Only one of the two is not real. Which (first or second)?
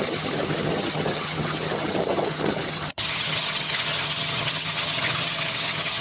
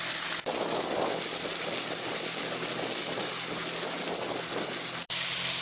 first